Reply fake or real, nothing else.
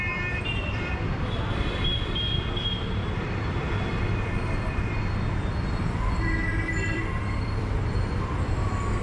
fake